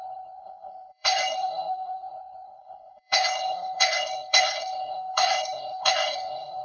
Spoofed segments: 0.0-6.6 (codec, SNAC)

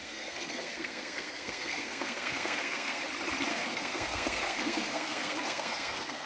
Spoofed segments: 0.0-3.0 (codec, SNAC); 3.5-6.3

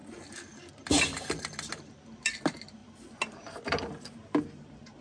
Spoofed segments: none

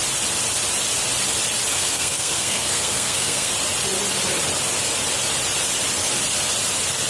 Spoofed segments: 1.7-3.5 (codec, SNAC)